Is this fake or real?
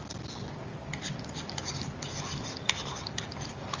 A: real